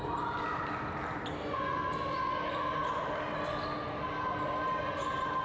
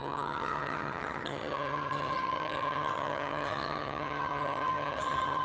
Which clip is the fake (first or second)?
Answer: second